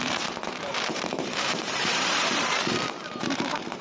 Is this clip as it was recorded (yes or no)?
no